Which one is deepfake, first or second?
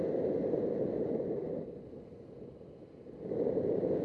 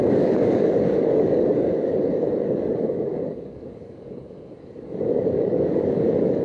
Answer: second